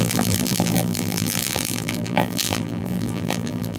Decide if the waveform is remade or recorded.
remade